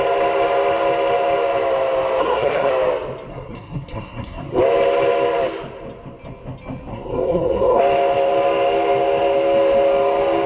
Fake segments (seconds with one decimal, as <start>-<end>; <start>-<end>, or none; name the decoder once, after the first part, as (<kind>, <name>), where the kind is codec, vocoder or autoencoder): 2.2-2.7 (codec, SNAC); 3.3-4.6; 6.9-7.8